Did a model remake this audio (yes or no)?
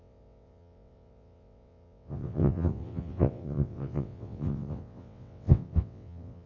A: yes